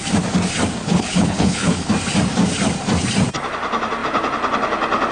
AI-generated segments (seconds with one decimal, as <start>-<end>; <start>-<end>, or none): 0.8-1.9